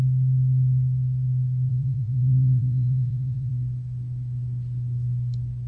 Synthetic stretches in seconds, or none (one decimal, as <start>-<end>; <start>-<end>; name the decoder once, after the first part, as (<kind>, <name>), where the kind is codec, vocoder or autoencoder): 1.7-3.5 (vocoder, Vocos)